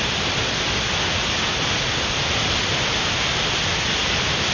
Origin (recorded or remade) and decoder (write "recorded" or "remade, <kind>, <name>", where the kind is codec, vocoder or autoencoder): recorded